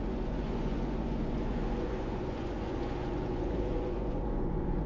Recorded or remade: remade